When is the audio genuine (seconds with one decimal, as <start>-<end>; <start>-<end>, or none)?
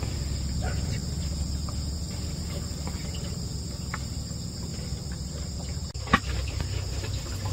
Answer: 0.0-7.5